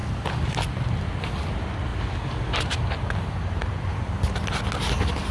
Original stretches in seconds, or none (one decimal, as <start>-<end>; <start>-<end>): 0.0-5.3